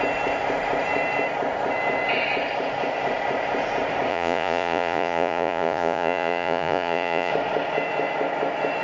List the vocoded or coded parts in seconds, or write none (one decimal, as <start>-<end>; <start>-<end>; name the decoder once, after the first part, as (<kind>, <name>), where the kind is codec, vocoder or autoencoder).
4.1-7.3 (vocoder, Vocos)